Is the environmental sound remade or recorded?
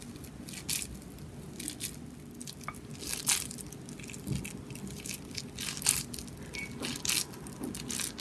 recorded